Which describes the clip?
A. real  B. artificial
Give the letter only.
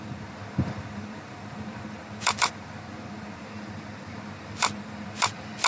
B